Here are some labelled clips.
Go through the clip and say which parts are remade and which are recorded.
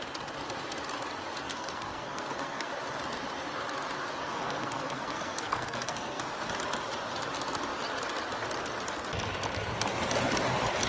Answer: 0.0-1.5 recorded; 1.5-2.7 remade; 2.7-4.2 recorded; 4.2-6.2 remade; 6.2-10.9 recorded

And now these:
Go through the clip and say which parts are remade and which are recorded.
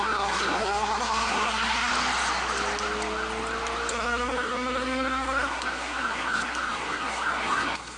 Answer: 0.0-1.9 remade; 1.9-3.9 recorded; 3.9-8.0 remade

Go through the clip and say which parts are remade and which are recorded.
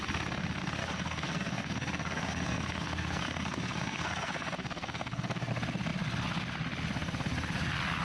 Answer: 0.0-0.8 recorded; 0.8-5.5 remade; 5.5-8.0 recorded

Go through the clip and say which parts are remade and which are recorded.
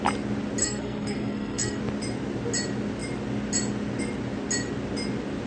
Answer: 0.0-0.6 recorded; 0.6-1.8 remade; 1.8-5.5 recorded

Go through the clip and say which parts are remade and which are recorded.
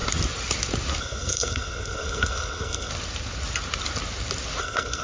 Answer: 0.0-1.0 recorded; 1.0-2.9 remade; 2.9-4.6 recorded; 4.6-5.0 remade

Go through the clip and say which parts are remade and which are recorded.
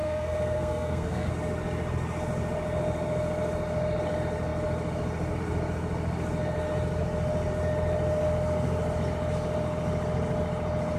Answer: 0.0-1.3 remade; 1.3-11.0 recorded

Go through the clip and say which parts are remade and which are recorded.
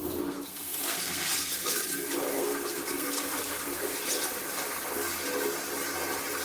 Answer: 0.0-1.8 remade; 1.8-2.3 recorded; 2.3-4.0 remade; 4.0-6.4 recorded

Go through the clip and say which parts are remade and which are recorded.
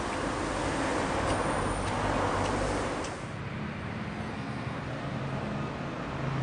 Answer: 0.0-4.1 recorded; 4.1-4.8 remade; 4.8-6.4 recorded